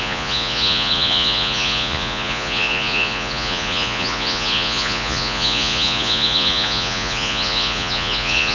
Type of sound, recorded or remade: remade